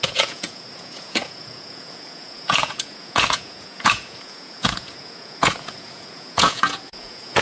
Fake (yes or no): yes